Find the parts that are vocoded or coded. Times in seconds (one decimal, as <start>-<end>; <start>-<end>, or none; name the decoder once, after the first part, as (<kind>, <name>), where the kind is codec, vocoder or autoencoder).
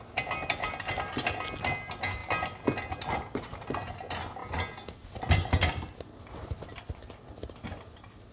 none